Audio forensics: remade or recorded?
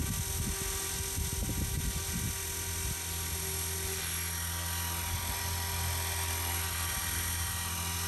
recorded